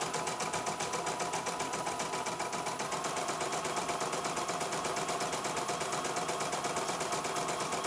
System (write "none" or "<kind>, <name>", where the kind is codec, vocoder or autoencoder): vocoder, BigVGAN v2